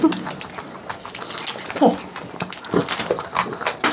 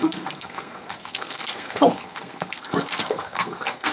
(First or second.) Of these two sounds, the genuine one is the first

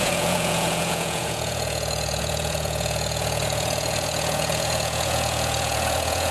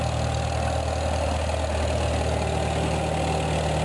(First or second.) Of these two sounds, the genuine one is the second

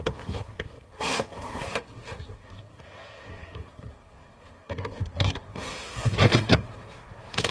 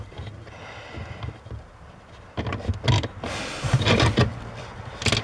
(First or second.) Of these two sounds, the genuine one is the second